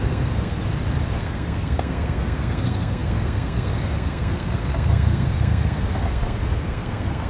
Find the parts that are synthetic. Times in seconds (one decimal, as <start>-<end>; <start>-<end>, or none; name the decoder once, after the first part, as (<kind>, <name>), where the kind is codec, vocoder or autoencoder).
0.0-0.6 (codec, SNAC); 1.2-7.3